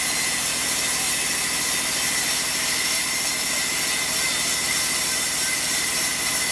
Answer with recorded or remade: recorded